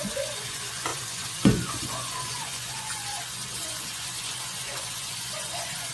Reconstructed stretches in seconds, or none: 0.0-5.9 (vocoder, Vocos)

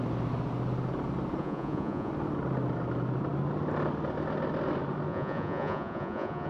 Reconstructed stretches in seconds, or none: 1.4-2.1 (vocoder, Vocos); 5.1-6.5

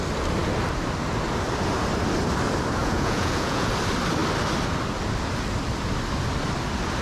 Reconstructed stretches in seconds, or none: 2.8-3.7 (vocoder, Vocos)

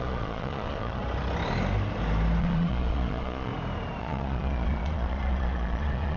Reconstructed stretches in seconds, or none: 0.0-1.0 (vocoder, Vocos); 2.4-3.5; 4.0-6.2

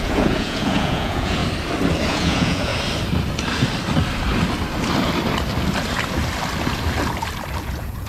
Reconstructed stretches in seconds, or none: 0.0-1.4 (vocoder, Vocos); 2.1-2.7; 7.6-8.1

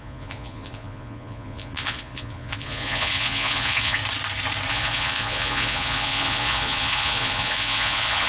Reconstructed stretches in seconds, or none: 0.0-4.0 (vocoder, Vocos); 4.7-8.3

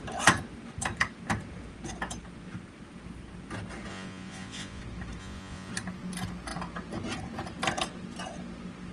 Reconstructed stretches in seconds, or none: 3.9-4.8 (vocoder, Vocos); 5.2-5.7